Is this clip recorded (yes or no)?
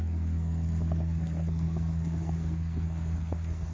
no